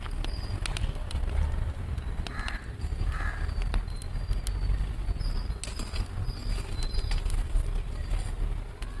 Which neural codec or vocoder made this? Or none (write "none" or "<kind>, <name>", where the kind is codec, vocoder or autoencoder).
none